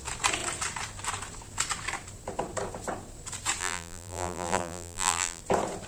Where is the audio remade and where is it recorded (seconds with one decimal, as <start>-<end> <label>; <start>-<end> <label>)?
0.0-3.6 recorded; 3.6-5.4 remade; 5.4-5.9 recorded